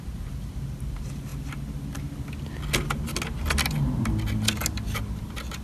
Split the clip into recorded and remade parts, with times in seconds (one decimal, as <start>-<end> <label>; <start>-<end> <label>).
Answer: 0.0-5.6 recorded